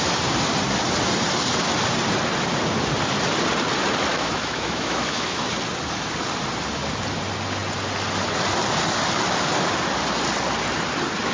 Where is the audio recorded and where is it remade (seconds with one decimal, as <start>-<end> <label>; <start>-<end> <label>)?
0.0-4.1 recorded; 4.1-5.5 remade; 5.5-11.3 recorded